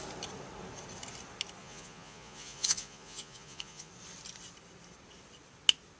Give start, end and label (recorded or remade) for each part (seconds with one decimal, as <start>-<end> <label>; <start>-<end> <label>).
0.0-1.6 recorded; 1.6-3.9 remade; 3.9-6.0 recorded